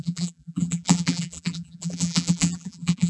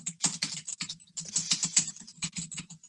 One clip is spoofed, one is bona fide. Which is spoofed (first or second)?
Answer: first